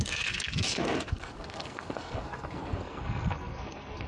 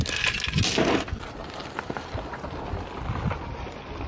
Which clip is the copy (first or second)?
first